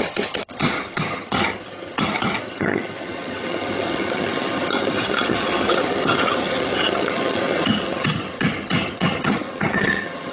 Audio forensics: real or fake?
fake